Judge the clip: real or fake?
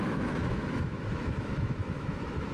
fake